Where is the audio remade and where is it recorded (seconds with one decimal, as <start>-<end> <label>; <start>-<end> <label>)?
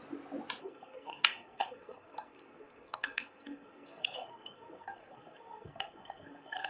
0.0-0.6 recorded; 0.6-6.7 remade